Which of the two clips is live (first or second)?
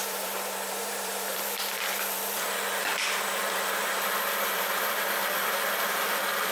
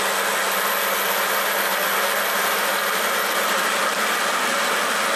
second